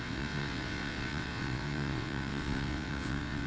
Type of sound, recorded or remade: remade